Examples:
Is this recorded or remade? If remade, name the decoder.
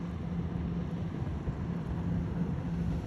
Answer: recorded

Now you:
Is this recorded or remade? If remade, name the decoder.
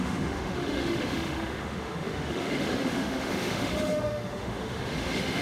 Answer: remade, autoencoder, DAC-VAE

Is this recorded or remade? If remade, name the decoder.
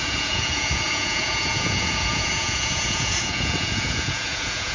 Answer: remade, vocoder, Vocos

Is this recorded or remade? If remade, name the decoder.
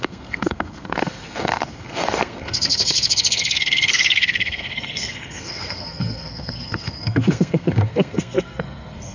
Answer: remade, codec, SNAC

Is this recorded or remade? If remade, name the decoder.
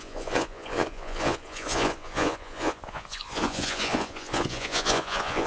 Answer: remade, vocoder, Vocos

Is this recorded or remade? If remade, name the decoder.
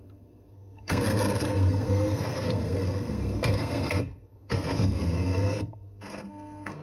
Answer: remade, codec, SNAC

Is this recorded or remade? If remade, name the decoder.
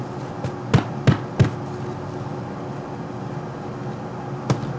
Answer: recorded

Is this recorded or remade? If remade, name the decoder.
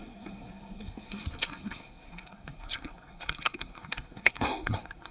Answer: remade, codec, SNAC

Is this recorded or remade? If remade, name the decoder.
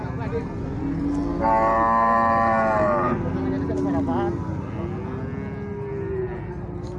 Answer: recorded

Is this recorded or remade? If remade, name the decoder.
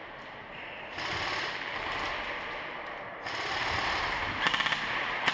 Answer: recorded